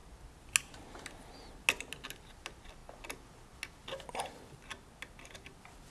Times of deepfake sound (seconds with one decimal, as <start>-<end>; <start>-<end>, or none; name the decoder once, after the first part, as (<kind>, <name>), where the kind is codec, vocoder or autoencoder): none